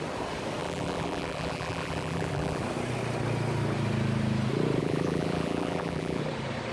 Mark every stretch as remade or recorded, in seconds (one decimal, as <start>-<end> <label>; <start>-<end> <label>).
0.0-0.6 recorded; 0.6-2.6 remade; 2.6-4.8 recorded; 4.8-6.2 remade; 6.2-6.7 recorded